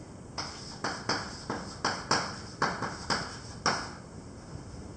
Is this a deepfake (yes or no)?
no